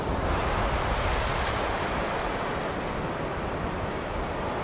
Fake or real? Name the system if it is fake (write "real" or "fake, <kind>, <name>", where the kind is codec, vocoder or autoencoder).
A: real